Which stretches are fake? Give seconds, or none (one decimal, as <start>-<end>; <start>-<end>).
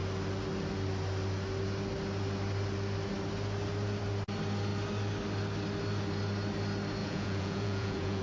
7.0-8.2